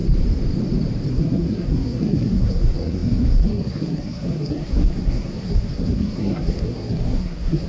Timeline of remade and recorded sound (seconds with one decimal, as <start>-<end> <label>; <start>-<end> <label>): 0.0-1.1 recorded; 1.1-7.7 remade